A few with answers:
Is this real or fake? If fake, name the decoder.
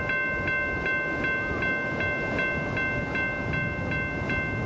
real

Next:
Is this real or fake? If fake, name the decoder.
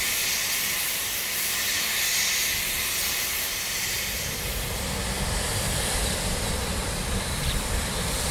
fake, vocoder, BigVGAN v2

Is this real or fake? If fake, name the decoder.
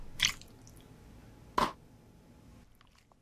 real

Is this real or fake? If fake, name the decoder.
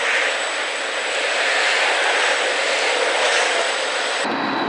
real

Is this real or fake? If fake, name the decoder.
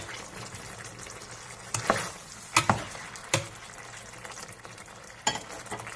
real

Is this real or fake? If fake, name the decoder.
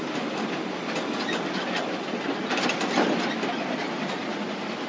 real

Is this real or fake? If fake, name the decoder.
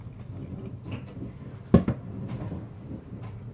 real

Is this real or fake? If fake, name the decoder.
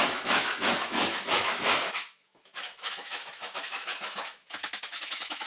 fake, autoencoder, DAC-VAE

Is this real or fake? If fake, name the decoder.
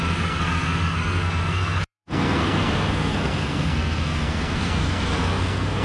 fake, codec, SNAC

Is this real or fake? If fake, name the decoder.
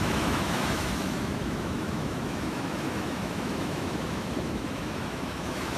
fake, autoencoder, DAC-VAE